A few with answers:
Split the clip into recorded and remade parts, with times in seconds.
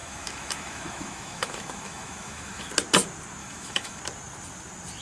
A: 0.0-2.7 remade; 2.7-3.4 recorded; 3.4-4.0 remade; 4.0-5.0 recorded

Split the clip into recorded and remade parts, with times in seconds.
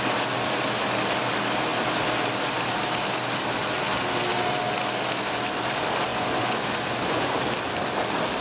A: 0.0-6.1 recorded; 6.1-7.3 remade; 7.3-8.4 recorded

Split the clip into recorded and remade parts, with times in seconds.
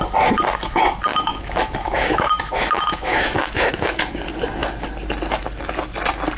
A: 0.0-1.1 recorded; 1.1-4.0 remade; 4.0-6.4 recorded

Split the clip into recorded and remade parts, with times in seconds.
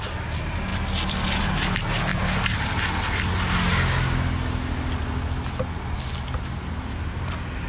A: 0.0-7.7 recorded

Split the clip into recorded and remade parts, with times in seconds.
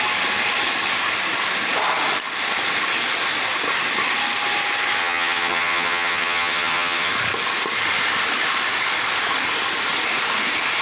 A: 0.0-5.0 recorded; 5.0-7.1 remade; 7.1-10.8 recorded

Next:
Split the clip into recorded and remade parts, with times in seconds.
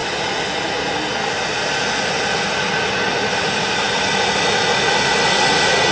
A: 0.0-5.9 recorded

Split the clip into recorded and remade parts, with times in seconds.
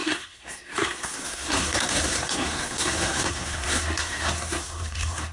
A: 0.0-5.3 remade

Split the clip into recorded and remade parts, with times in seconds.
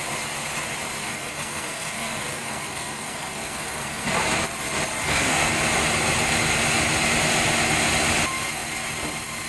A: 0.0-1.0 recorded; 1.0-4.1 remade; 4.1-5.0 recorded; 5.0-5.5 remade; 5.5-9.5 recorded